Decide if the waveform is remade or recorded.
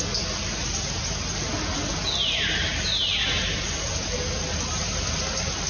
recorded